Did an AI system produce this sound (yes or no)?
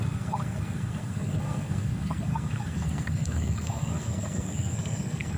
yes